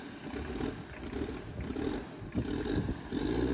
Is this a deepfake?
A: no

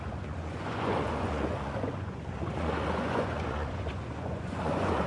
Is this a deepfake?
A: yes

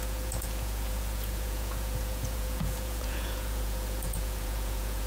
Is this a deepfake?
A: yes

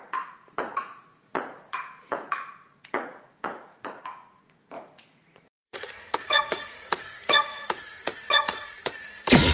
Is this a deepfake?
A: yes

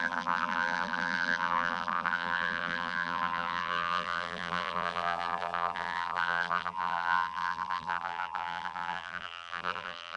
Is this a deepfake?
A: yes